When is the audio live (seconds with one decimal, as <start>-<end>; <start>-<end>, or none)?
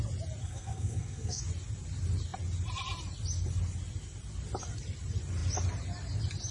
0.0-0.4; 1.4-6.5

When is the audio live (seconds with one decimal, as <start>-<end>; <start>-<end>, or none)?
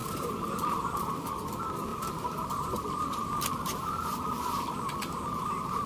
1.0-1.9; 5.4-5.9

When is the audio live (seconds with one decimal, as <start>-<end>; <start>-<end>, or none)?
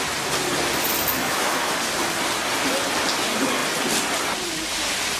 0.0-1.2; 1.7-5.2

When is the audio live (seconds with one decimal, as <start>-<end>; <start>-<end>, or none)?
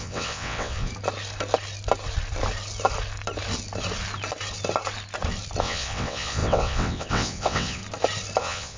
0.9-5.6; 7.8-8.4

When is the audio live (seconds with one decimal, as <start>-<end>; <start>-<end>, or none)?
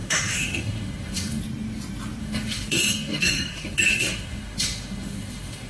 1.4-2.2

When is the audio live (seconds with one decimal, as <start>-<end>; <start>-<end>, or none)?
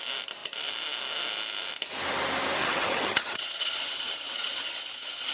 0.0-2.6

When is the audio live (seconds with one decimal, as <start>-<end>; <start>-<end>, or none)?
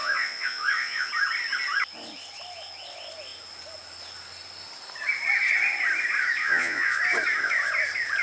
1.1-6.4; 7.0-8.2